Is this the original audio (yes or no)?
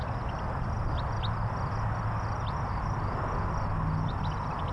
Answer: yes